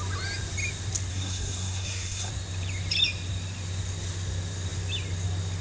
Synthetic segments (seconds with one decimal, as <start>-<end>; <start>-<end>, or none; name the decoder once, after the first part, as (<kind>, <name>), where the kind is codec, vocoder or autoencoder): 1.1-2.3 (codec, SNAC)